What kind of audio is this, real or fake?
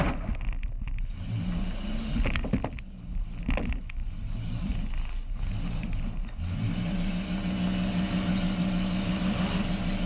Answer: real